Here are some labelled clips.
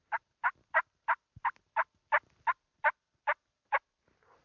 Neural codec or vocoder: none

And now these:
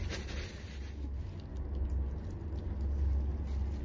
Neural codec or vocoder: none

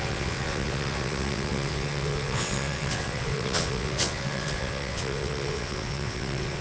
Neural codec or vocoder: vocoder, WaveNeXt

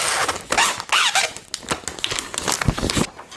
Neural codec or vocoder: none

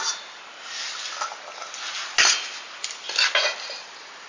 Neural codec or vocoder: none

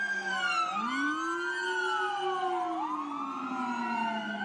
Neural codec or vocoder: none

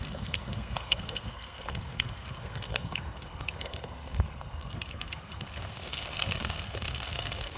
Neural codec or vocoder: codec, SNAC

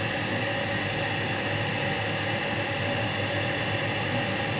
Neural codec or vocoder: none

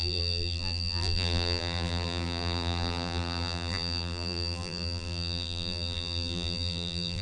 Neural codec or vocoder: vocoder, BigVGAN v2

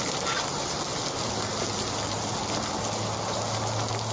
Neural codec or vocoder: none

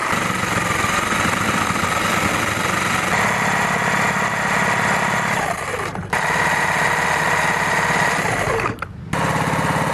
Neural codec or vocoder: none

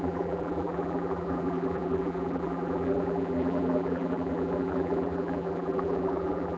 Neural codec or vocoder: vocoder, BigVGAN v2